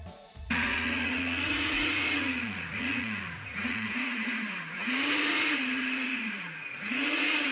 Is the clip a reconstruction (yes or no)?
yes